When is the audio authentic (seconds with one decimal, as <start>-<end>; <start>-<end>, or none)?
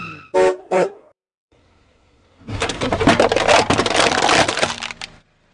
0.0-0.6; 2.9-5.5